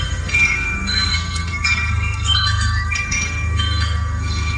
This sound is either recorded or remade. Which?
remade